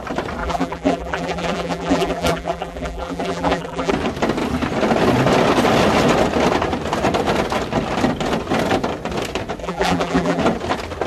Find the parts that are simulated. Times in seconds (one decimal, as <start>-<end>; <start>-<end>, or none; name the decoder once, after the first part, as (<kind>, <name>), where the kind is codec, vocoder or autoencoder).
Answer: 0.4-3.9 (vocoder, BigVGAN v2); 9.6-10.4